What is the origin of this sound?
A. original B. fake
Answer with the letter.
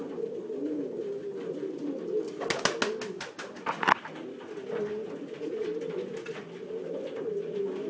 A